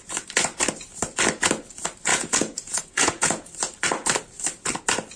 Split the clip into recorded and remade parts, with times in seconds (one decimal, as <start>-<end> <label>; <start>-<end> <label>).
0.0-2.1 recorded; 2.1-3.5 remade; 3.5-5.2 recorded